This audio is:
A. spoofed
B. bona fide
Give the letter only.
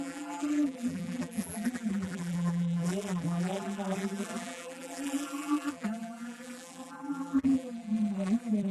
A